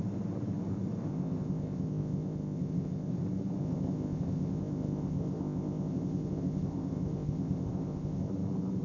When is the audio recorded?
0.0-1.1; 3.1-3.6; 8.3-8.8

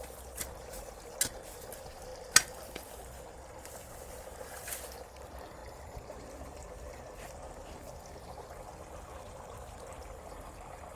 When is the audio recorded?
0.0-11.0

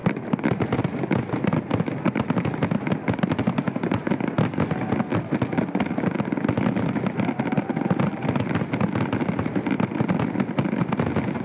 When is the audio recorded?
0.7-11.4

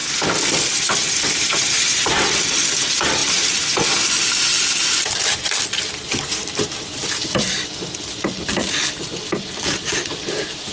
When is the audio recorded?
0.0-0.7; 3.2-4.2

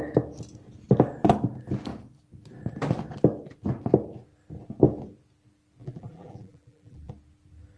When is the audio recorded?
0.0-5.8; 7.1-7.8